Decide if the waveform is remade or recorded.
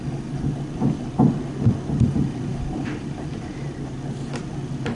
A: recorded